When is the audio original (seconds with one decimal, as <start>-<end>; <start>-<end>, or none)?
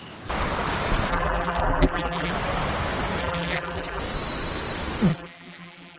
0.0-1.1; 2.3-3.2; 4.0-5.1